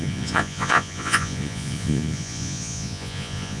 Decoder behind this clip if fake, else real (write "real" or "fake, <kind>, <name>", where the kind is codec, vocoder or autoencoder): fake, vocoder, Vocos